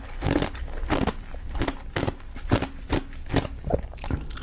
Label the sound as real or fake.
real